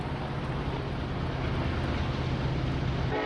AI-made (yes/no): no